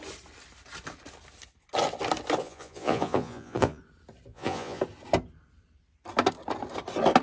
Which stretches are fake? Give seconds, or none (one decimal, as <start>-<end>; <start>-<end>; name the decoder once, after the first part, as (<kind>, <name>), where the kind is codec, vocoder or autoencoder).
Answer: 2.4-3.8 (vocoder, Vocos); 4.3-4.8